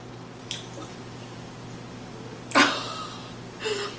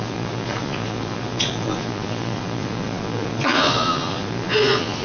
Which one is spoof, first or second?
second